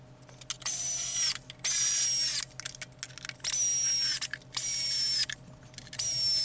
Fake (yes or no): no